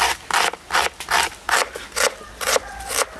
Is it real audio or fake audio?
real